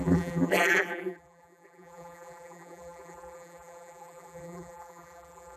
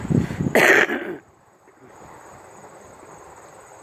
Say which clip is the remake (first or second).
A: first